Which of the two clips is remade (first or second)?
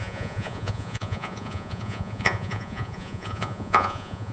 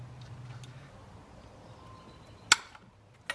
first